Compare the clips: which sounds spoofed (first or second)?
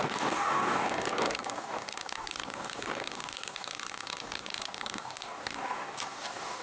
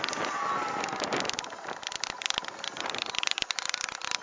first